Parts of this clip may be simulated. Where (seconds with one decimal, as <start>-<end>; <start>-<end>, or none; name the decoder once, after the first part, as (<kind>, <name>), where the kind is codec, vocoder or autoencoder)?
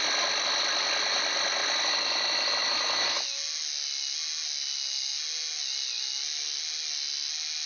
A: none